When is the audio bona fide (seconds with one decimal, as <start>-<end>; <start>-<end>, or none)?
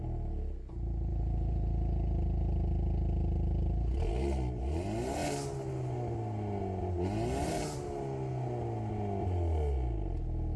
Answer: 0.0-1.1; 1.7-10.6